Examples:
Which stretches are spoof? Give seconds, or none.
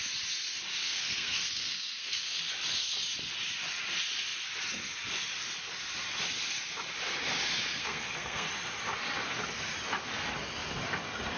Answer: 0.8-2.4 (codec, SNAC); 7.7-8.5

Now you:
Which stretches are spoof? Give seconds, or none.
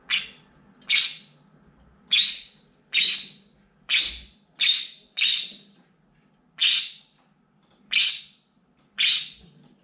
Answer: none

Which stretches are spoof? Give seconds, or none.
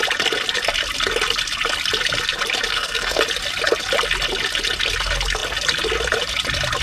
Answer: 2.7-3.2 (codec, SNAC)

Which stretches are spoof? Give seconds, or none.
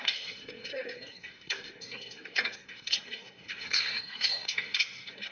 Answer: 0.0-5.3 (codec, SNAC)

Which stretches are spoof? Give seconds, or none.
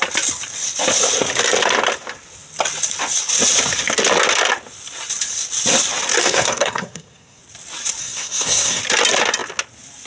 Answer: 6.2-7.4 (codec, SNAC); 8.0-8.8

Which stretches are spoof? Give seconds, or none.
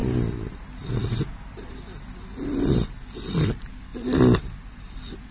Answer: none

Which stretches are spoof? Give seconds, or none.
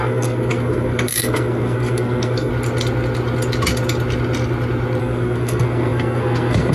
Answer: 0.0-2.5 (codec, SNAC); 5.0-6.7